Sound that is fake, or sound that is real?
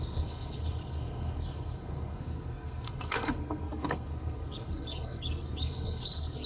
fake